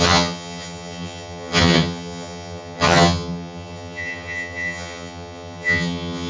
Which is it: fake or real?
fake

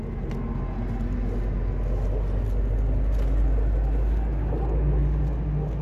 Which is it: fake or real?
real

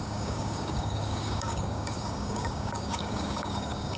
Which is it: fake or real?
fake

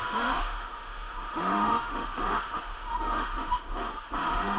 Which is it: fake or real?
fake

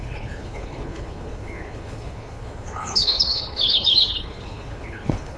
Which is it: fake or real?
fake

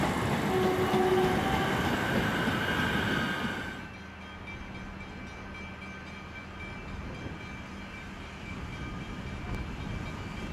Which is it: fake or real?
real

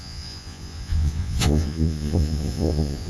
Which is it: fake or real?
fake